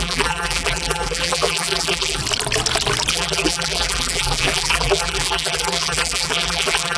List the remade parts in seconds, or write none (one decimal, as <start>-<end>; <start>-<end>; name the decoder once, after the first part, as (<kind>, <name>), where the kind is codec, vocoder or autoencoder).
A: 0.0-2.2 (vocoder, BigVGAN v2); 3.1-7.0